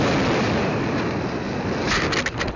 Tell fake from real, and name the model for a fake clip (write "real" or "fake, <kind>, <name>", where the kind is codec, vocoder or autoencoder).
real